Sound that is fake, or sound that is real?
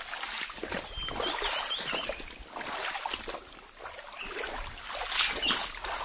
real